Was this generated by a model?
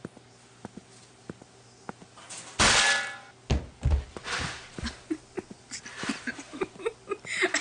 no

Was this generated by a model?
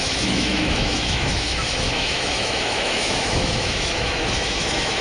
yes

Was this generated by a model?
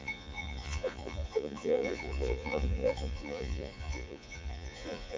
yes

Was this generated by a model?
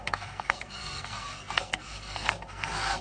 yes